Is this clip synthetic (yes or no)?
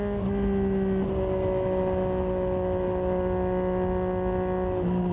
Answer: no